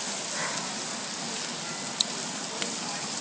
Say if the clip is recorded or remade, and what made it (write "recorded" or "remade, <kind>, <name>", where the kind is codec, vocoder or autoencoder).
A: recorded